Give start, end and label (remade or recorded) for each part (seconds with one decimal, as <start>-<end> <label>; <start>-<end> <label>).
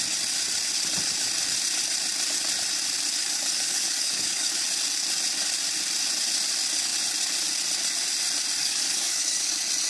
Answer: 0.0-3.2 recorded; 3.2-4.5 remade; 4.5-8.6 recorded; 8.6-9.5 remade; 9.5-9.9 recorded